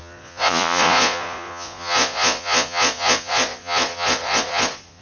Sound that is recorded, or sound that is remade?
remade